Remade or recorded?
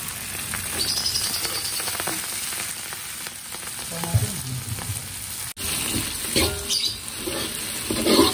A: recorded